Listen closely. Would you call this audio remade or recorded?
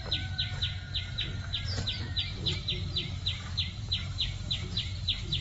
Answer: recorded